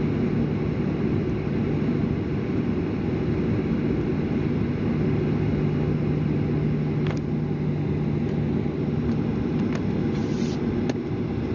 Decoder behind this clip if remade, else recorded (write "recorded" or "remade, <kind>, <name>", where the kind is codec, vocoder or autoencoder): recorded